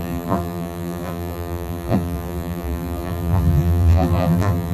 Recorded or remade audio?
remade